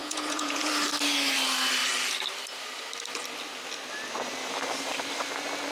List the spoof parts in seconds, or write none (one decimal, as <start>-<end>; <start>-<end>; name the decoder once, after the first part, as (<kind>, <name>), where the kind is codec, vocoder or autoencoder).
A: 0.0-0.7 (vocoder, Vocos)